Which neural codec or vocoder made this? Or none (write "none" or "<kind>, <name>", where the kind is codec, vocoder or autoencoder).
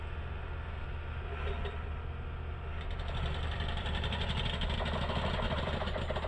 none